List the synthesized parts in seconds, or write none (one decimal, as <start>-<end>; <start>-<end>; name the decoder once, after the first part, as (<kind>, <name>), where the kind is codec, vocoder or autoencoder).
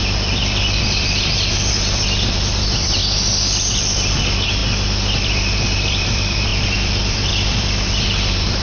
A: 0.0-3.0 (vocoder, BigVGAN v2); 3.9-4.6; 5.2-8.6